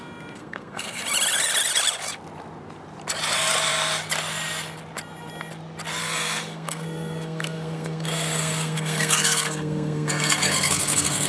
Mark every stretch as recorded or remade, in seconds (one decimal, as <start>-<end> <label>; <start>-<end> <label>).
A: 0.0-0.4 recorded; 0.4-1.0 remade; 1.0-6.0 recorded; 6.0-11.3 remade